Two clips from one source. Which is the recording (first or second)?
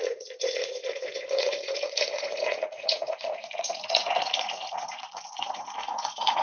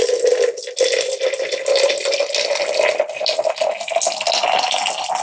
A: second